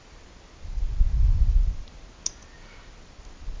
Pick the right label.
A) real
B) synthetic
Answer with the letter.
A